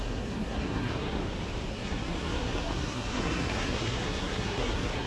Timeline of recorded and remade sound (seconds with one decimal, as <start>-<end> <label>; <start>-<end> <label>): 0.0-1.2 remade; 1.2-1.7 recorded; 1.7-5.1 remade